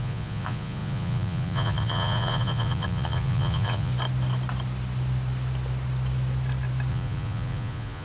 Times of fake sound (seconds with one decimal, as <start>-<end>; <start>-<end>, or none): 0.0-3.9; 6.9-8.0